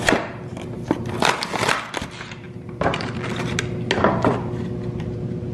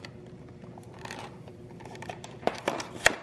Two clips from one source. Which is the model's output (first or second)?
second